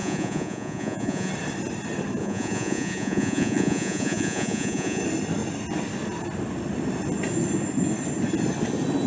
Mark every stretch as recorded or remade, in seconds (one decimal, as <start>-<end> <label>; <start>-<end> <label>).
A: 0.0-1.3 remade; 1.3-2.2 recorded; 2.2-5.0 remade; 5.0-9.1 recorded